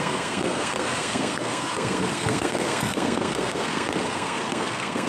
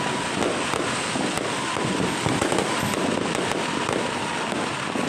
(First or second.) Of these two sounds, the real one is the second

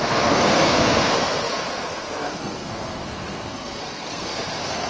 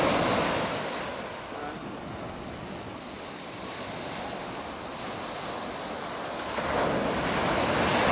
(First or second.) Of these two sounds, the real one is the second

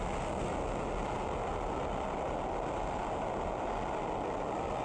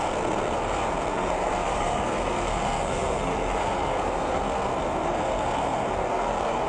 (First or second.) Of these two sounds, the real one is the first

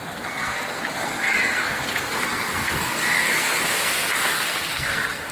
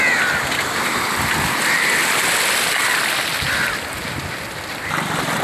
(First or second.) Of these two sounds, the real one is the second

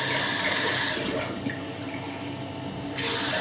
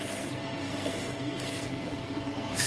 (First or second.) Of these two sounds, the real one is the first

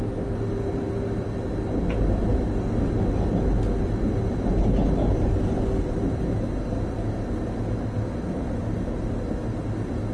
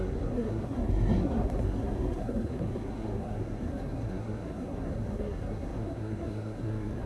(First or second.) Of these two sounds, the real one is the first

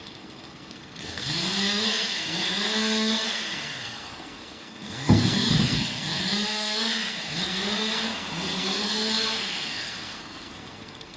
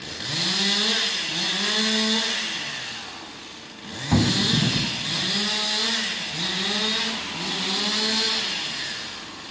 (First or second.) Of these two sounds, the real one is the second